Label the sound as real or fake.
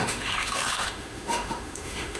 fake